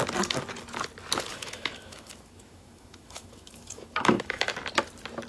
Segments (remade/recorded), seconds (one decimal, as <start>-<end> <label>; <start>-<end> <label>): 0.0-1.3 recorded; 1.3-4.5 remade; 4.5-5.3 recorded